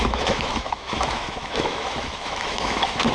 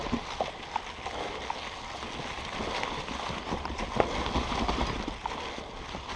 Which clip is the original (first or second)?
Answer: second